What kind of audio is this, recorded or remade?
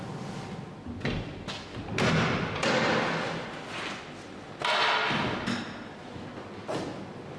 recorded